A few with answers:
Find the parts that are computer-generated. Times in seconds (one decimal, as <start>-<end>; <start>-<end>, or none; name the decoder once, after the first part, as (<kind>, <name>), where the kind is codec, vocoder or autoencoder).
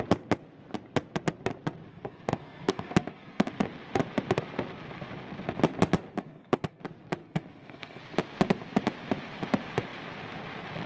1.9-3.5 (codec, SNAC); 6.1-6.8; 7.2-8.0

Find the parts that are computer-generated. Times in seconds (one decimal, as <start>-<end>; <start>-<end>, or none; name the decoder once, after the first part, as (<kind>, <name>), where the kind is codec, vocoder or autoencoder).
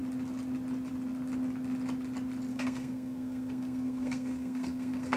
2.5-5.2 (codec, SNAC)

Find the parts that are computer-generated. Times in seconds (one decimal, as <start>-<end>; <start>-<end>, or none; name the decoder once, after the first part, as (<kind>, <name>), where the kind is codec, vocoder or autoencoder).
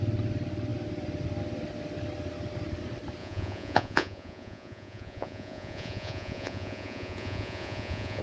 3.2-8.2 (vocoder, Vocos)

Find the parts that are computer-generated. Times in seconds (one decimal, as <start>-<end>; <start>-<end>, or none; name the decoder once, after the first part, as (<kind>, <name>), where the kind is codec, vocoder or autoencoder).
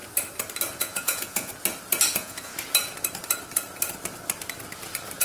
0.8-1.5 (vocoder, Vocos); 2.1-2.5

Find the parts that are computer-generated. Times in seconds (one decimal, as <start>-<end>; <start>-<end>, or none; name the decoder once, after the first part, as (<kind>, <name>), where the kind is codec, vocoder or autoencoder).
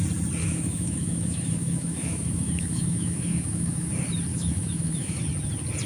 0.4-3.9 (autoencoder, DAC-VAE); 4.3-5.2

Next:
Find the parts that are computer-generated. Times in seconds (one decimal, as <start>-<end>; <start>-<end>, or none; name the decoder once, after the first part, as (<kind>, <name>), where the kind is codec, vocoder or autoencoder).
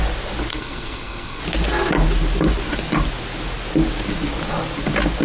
0.5-1.4 (codec, SNAC)